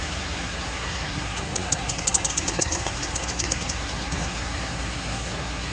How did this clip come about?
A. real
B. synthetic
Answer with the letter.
B